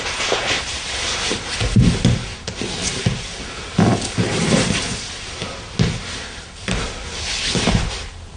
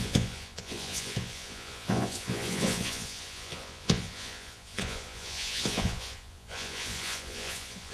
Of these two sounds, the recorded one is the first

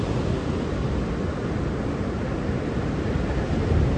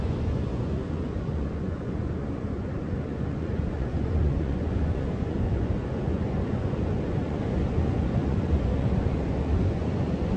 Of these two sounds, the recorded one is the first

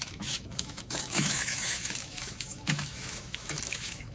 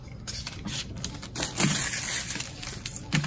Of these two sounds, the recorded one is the second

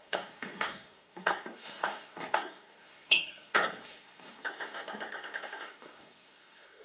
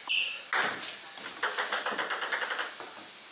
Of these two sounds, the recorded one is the second